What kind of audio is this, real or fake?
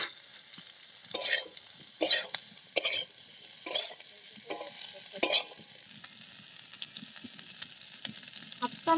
real